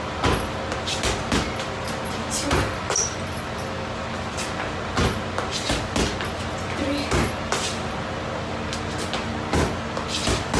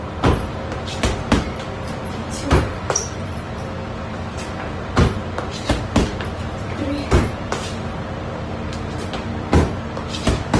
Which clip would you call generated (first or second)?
second